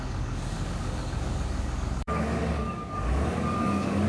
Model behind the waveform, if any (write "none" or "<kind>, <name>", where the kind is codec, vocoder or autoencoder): codec, DAC